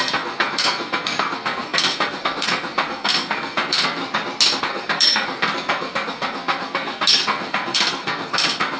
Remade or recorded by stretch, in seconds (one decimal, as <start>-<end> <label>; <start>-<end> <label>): 0.0-4.0 remade; 4.0-4.6 recorded; 4.6-8.8 remade